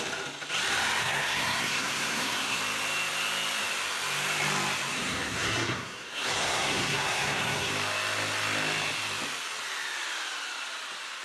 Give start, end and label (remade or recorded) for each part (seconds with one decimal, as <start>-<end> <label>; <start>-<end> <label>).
0.0-1.0 recorded; 1.0-2.6 remade; 2.6-4.9 recorded; 4.9-7.7 remade; 7.7-11.2 recorded